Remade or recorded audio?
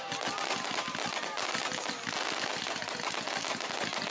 recorded